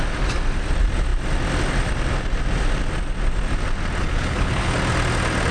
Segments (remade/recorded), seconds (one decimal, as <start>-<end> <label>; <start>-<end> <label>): 0.0-4.0 recorded; 4.0-4.8 remade; 4.8-5.5 recorded